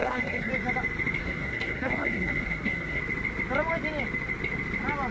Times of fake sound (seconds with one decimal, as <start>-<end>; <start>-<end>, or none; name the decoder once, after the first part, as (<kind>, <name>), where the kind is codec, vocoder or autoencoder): 0.0-0.5 (codec, SNAC); 1.2-3.0